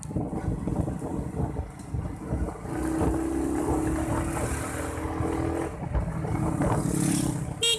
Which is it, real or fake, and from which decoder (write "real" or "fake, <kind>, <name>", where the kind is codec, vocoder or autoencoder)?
real